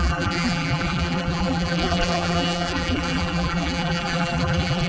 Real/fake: fake